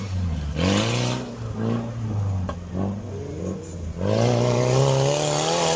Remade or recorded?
recorded